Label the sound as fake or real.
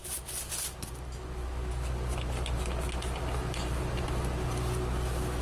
real